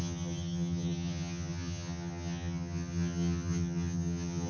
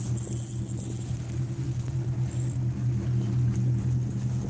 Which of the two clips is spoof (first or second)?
first